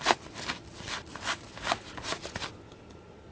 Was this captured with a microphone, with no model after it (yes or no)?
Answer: yes